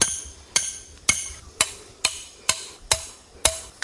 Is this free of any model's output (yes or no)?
yes